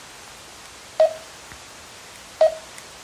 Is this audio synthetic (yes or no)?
no